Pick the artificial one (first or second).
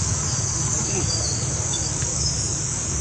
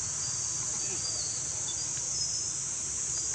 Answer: first